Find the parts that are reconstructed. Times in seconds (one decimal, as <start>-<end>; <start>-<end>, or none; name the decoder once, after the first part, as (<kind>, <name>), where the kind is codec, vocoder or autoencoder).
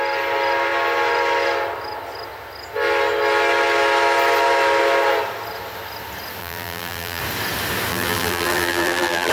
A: 6.4-7.2 (vocoder, BigVGAN v2); 7.9-9.3